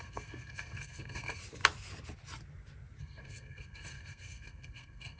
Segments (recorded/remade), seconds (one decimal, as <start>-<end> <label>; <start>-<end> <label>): 0.0-1.4 remade; 1.4-3.0 recorded; 3.0-5.2 remade